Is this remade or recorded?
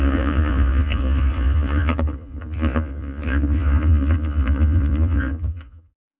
remade